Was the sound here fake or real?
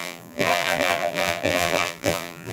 fake